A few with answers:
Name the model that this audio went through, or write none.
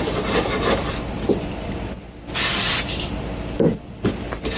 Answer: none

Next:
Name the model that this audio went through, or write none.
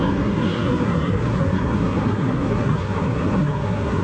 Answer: codec, SNAC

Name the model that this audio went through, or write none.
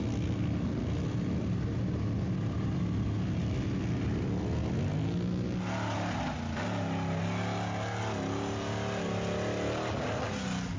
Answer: none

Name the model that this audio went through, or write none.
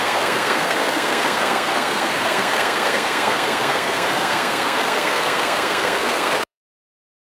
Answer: codec, SNAC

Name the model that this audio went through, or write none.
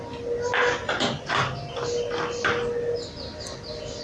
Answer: none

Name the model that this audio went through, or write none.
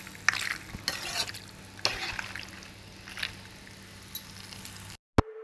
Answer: none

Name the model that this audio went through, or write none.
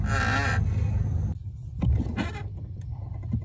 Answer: none